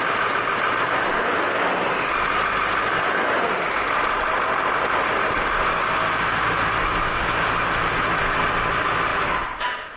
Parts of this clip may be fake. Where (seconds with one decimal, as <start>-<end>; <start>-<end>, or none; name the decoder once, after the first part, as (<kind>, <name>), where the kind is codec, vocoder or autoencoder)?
none